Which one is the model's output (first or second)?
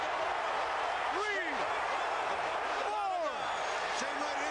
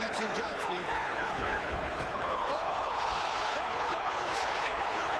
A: second